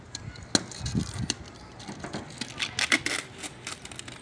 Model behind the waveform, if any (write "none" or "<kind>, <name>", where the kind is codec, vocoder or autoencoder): none